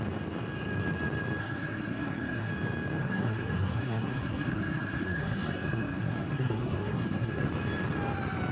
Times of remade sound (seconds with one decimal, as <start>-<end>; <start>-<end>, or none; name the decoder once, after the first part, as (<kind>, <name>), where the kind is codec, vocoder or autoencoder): 1.4-2.5 (codec, SNAC); 3.0-7.5